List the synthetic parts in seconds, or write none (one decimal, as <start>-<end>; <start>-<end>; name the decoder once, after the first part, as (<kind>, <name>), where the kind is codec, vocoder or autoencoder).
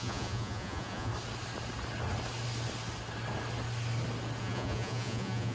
0.0-1.1 (vocoder, Vocos); 4.4-5.5